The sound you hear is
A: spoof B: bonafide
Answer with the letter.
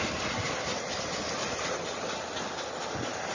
B